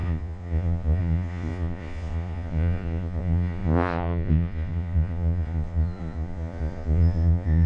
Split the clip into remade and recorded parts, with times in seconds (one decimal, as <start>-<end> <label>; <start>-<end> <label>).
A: 0.0-7.7 remade